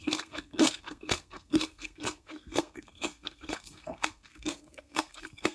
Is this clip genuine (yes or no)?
no